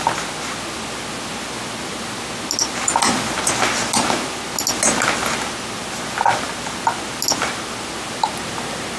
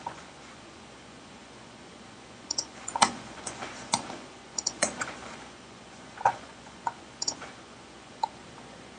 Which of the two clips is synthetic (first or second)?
second